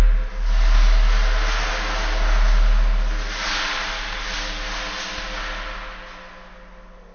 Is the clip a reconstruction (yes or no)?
no